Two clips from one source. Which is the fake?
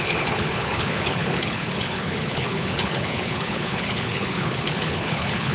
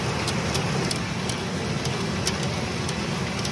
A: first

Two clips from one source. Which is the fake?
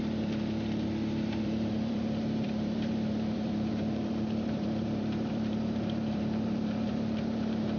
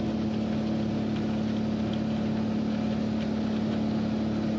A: first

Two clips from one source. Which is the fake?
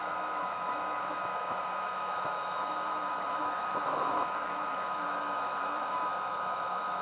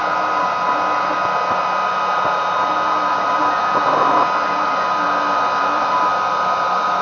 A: first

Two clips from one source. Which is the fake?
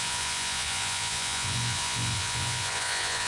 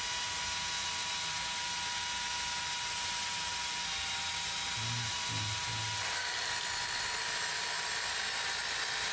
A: first